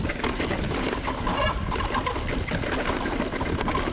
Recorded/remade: recorded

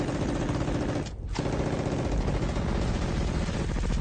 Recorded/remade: recorded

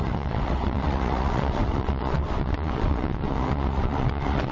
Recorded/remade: remade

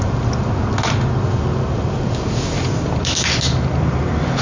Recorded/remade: recorded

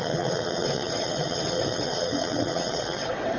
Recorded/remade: remade